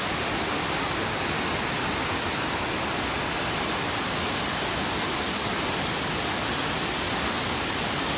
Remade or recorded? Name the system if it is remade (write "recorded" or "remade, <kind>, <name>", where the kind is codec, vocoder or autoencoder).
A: recorded